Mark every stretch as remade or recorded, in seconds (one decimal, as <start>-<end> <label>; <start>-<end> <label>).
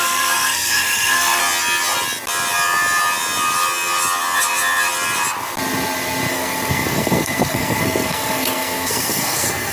0.0-1.4 remade; 1.4-6.3 recorded; 6.3-9.7 remade